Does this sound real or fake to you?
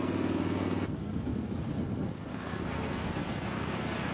fake